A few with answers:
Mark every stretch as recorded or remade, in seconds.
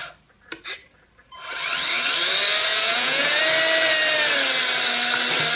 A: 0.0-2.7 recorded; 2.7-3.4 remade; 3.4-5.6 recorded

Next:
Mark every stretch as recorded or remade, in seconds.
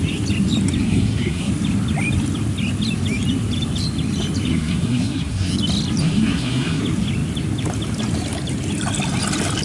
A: 0.0-0.8 recorded; 0.8-1.5 remade; 1.5-4.5 recorded; 4.5-5.5 remade; 5.5-6.0 recorded; 6.0-6.8 remade; 6.8-9.6 recorded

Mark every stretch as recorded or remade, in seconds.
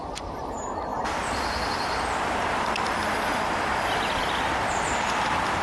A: 0.0-0.9 remade; 0.9-2.2 recorded; 2.2-5.6 remade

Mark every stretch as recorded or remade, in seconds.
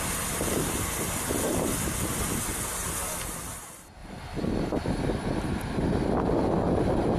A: 0.0-7.2 recorded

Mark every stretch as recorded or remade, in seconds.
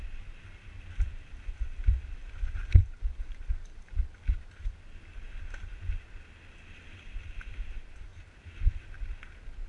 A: 0.0-9.7 recorded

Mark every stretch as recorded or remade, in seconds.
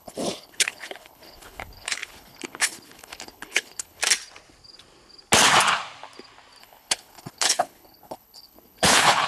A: 0.0-4.0 remade; 4.0-6.6 recorded; 6.6-9.3 remade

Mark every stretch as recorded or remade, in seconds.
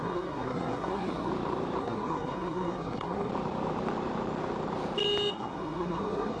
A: 0.0-1.3 remade; 1.3-1.8 recorded; 1.8-3.3 remade; 3.3-5.3 recorded; 5.3-6.4 remade